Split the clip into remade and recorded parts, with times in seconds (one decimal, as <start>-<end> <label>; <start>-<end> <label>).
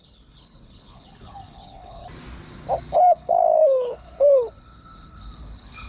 0.0-2.0 remade; 2.0-2.9 recorded; 2.9-5.9 remade